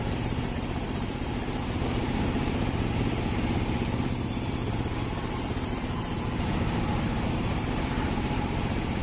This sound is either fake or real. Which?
fake